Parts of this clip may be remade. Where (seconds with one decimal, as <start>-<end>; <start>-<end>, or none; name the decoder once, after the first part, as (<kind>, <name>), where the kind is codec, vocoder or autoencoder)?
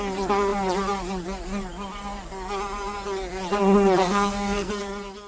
4.0-4.7 (codec, SNAC)